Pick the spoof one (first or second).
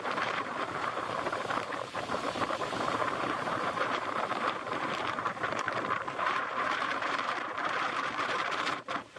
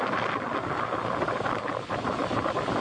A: first